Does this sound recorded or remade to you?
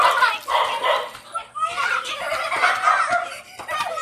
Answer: recorded